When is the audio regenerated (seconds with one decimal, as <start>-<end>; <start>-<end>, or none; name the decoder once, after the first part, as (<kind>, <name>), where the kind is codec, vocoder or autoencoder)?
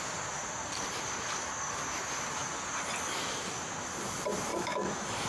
4.5-5.3 (autoencoder, DAC-VAE)